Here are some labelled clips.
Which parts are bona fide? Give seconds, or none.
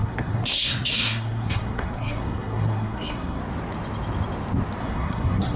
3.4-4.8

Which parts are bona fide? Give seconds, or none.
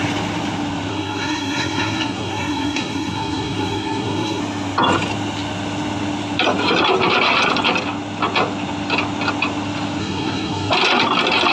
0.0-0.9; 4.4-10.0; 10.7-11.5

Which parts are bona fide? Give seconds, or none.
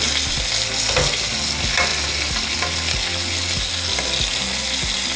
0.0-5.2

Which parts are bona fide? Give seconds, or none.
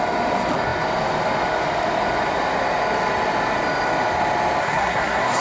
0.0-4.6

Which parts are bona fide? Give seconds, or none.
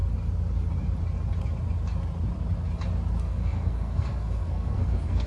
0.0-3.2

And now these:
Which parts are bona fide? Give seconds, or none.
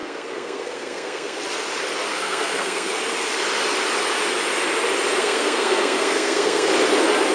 1.4-2.1; 3.0-5.2; 6.7-7.3